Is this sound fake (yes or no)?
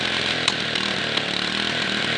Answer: yes